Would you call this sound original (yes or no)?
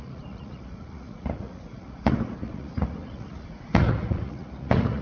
no